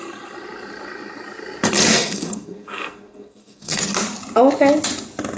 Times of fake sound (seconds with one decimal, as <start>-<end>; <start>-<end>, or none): 1.9-3.8